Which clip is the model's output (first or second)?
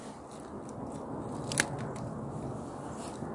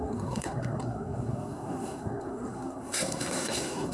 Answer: second